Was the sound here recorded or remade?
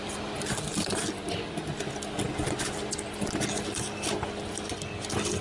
recorded